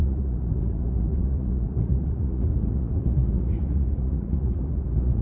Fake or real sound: fake